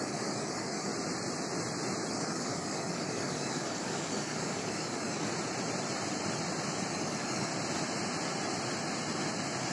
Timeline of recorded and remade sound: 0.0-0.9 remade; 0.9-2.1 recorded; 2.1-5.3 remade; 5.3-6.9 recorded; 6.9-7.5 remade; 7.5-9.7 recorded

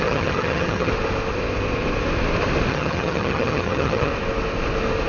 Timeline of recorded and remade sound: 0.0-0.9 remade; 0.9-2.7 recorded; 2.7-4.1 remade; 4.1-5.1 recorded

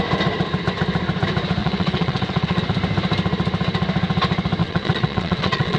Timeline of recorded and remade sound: 0.0-1.6 recorded; 1.6-2.6 remade; 2.6-4.6 recorded; 4.6-5.8 remade

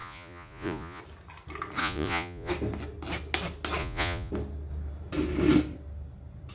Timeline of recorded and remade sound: 0.0-1.0 remade; 1.0-1.8 recorded; 1.8-2.5 remade; 2.5-3.8 recorded; 3.8-4.3 remade; 4.3-6.5 recorded